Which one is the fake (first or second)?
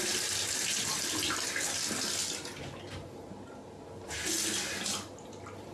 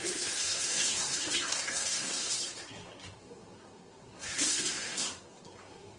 second